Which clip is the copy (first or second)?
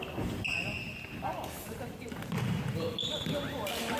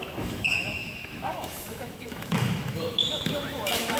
second